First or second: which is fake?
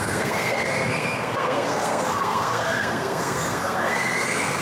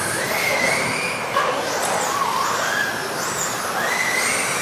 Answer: first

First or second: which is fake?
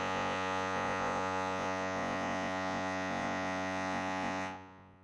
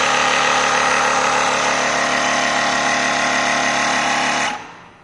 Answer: first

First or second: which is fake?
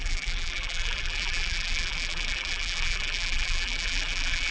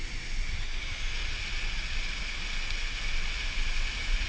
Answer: first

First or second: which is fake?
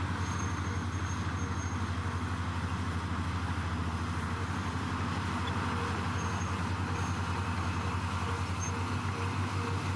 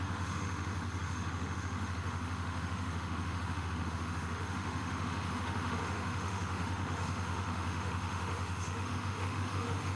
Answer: second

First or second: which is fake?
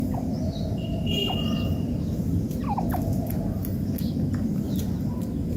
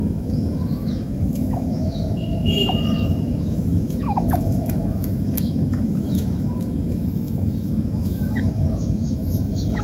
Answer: second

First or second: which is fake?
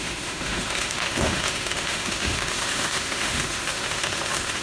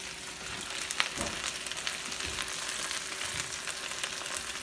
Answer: first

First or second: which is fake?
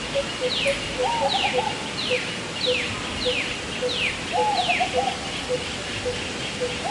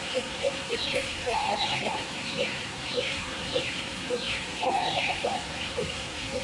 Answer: second